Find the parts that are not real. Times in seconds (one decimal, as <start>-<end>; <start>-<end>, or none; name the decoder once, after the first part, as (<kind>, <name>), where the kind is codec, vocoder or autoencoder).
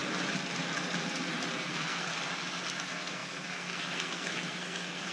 1.7-2.1 (codec, SNAC); 2.8-5.1